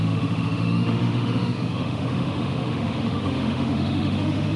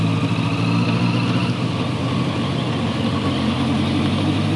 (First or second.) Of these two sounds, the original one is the second